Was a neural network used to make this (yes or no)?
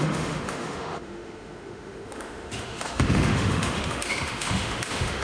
yes